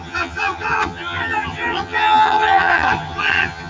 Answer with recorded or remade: remade